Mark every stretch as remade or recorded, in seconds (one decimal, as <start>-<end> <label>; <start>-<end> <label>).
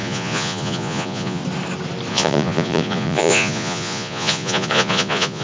0.0-1.4 remade; 1.4-2.1 recorded; 2.1-5.4 remade